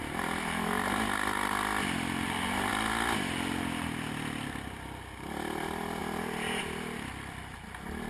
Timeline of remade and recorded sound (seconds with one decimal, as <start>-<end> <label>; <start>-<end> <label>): 0.0-8.1 recorded